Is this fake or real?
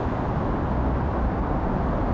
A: real